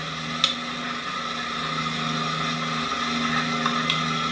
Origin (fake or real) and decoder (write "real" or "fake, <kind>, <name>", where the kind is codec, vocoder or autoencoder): real